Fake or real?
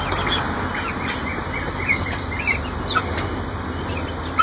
real